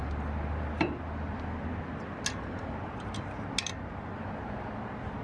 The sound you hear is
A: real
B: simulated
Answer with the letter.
A